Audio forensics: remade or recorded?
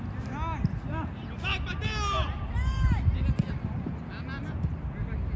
recorded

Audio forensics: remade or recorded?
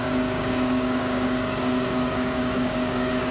remade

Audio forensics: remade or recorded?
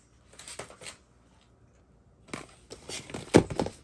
recorded